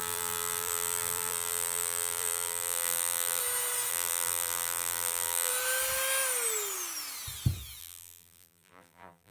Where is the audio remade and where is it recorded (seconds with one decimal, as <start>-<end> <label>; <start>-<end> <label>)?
0.0-3.4 remade; 3.4-3.9 recorded; 3.9-5.5 remade; 5.5-7.8 recorded; 7.8-9.3 remade